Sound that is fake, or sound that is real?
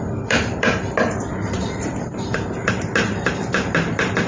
real